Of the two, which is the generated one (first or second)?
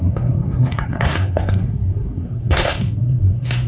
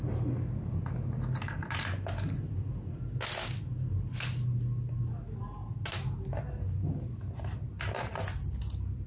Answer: first